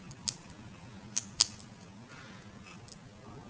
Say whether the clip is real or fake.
real